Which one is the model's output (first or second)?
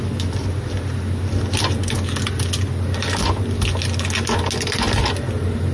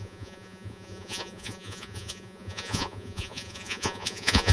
second